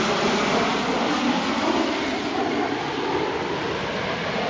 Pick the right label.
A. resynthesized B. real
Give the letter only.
B